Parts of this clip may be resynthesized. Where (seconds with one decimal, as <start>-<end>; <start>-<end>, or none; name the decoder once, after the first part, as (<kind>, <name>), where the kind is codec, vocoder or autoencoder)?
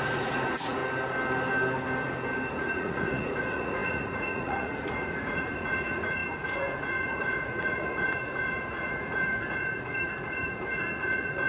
0.0-0.8 (vocoder, Vocos); 2.5-11.5